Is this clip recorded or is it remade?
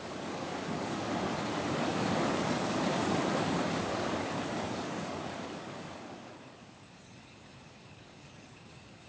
remade